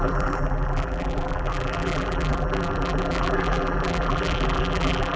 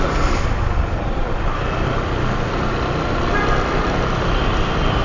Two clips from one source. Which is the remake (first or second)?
first